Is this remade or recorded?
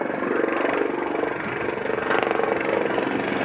recorded